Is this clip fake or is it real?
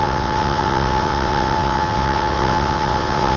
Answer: fake